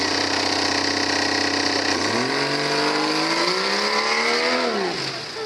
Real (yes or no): yes